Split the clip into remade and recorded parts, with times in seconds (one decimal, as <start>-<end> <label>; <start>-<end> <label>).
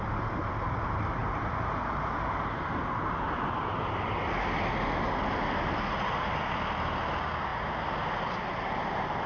0.0-9.3 recorded